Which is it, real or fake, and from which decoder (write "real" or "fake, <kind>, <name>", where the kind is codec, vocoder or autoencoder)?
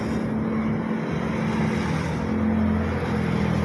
real